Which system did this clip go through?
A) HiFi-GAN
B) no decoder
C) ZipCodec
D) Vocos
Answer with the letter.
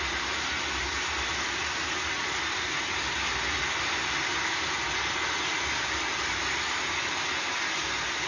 B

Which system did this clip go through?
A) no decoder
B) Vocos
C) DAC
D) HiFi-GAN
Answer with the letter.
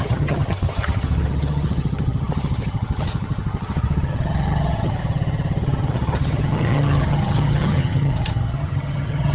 D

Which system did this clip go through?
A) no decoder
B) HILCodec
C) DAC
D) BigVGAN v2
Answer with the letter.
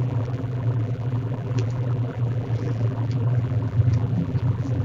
D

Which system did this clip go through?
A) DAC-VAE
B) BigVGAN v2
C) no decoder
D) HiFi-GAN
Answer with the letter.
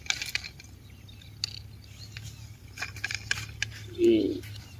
C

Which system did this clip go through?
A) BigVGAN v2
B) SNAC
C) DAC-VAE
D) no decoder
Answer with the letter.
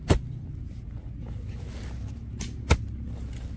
D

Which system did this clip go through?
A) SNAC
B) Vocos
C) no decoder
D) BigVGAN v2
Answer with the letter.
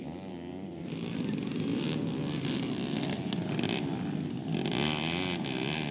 C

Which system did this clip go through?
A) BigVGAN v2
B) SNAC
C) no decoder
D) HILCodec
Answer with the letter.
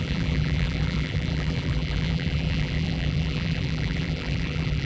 A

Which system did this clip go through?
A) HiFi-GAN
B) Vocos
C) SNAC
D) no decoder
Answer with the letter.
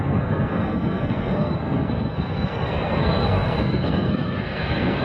C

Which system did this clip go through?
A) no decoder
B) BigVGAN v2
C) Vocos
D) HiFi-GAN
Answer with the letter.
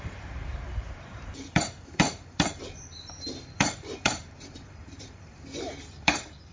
B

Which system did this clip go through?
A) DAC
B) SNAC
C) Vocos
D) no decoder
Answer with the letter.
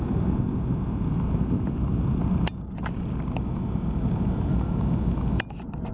D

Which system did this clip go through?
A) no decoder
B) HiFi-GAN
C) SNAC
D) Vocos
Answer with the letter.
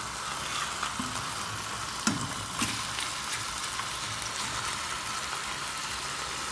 A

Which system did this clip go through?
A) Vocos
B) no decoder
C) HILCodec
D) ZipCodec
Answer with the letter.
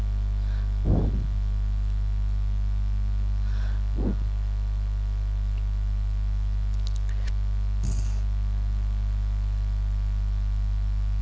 B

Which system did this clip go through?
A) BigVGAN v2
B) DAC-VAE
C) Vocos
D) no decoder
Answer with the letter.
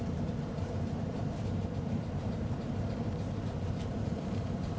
A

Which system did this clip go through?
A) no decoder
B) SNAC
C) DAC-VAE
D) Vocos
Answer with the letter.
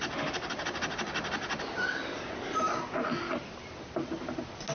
A